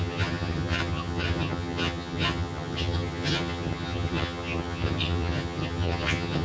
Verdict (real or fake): fake